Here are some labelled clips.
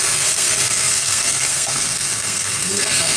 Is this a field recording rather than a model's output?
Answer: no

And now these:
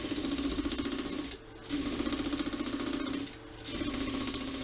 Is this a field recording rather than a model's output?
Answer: yes